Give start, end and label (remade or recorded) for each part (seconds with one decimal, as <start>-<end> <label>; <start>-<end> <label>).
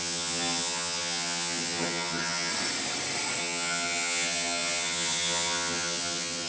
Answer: 0.0-2.5 remade; 2.5-3.4 recorded; 3.4-6.5 remade